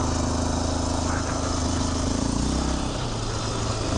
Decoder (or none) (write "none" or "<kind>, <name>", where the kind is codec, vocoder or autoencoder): none